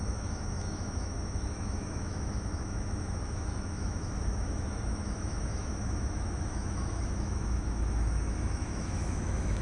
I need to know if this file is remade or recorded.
remade